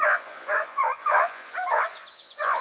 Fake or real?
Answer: fake